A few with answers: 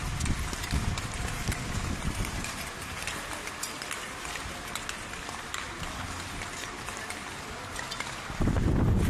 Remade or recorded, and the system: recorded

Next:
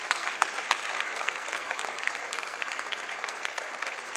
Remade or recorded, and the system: remade, codec, SNAC